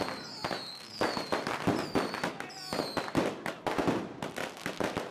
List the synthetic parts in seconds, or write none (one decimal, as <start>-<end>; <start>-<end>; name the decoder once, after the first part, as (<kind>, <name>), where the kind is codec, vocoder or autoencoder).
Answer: none